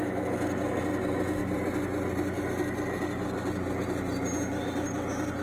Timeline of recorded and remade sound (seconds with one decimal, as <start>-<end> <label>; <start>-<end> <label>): 0.0-5.4 recorded